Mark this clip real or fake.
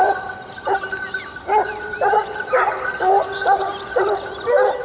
real